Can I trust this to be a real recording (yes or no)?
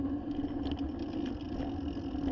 yes